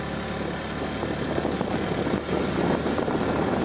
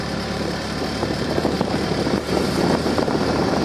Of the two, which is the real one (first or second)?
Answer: first